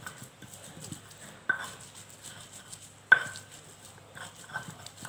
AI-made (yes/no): no